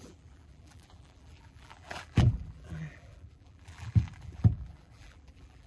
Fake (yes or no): yes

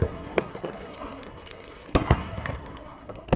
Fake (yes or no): yes